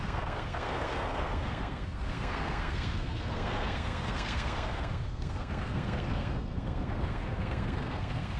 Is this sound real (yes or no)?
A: no